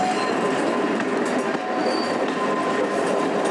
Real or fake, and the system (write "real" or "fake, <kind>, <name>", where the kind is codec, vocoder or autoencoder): real